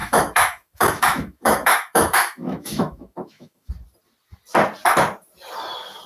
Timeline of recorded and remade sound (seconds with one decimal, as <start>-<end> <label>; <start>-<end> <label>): 0.0-3.7 remade; 3.7-6.1 recorded